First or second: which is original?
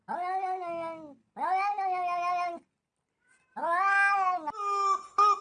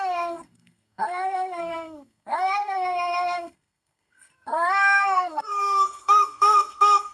first